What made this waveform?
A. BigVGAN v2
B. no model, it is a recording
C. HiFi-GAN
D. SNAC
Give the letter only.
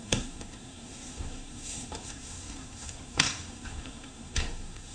D